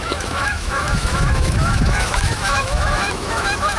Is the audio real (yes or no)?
no